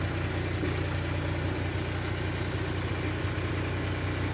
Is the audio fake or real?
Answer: real